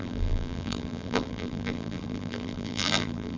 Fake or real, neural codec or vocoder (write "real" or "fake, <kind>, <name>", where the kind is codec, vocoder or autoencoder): fake, vocoder, BigVGAN v2